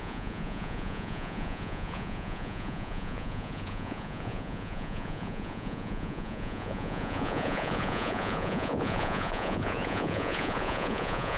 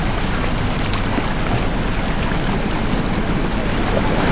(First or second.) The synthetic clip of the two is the first